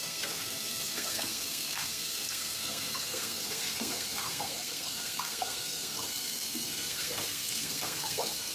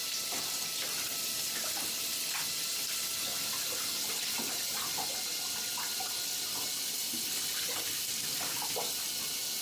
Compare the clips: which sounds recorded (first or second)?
second